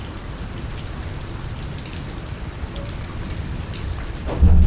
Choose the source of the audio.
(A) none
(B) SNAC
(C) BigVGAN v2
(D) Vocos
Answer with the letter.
C